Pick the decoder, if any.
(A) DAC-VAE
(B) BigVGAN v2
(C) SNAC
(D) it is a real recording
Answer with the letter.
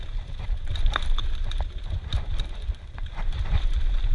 B